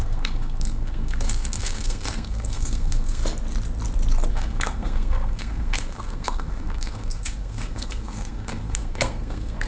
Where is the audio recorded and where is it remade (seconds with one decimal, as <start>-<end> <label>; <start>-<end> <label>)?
0.0-3.2 remade; 3.2-4.3 recorded; 4.3-9.7 remade